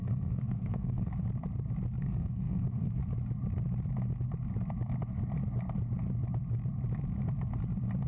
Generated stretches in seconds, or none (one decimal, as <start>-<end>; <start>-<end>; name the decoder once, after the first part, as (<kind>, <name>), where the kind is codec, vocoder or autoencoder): 0.0-1.1 (codec, SNAC); 2.0-3.0